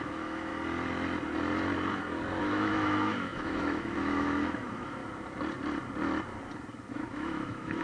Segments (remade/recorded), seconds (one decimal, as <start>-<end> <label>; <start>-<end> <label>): 0.0-0.5 remade; 0.5-2.4 recorded; 2.4-5.0 remade; 5.0-6.9 recorded; 6.9-7.8 remade